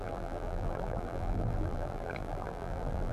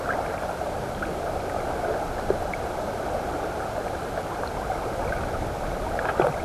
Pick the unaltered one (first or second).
second